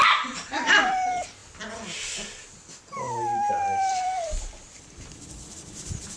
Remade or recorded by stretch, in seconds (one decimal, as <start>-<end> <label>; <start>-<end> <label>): 0.0-1.4 remade; 1.4-3.5 recorded; 3.5-6.2 remade